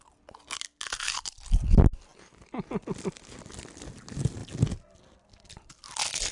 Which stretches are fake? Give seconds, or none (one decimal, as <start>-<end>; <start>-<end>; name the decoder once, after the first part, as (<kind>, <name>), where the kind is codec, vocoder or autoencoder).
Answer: none